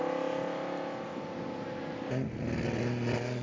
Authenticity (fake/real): real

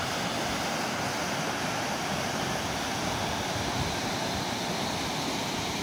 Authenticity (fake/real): real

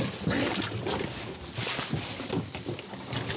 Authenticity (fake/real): real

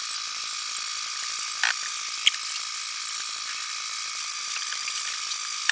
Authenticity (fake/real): real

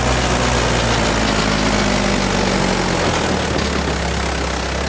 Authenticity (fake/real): real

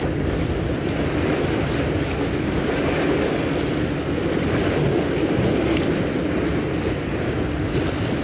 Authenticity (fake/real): real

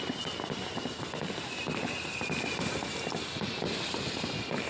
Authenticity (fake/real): real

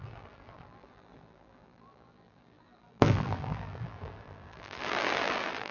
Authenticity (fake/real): fake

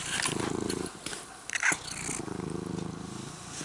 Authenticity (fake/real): real